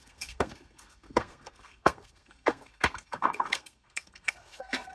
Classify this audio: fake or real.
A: fake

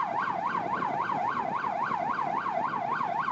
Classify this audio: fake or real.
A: real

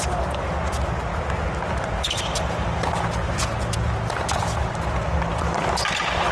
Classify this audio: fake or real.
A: real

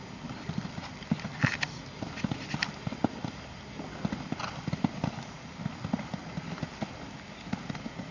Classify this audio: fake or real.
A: real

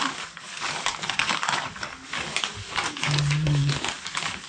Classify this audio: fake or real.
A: fake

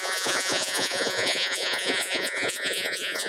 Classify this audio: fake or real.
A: fake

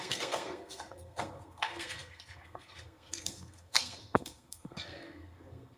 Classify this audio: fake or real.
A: fake